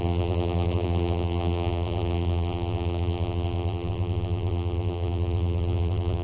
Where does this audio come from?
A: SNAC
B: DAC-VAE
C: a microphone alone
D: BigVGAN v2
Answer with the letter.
D